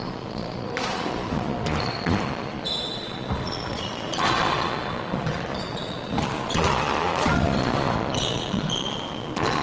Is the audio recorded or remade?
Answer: remade